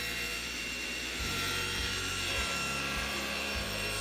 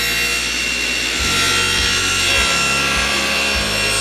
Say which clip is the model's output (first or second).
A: first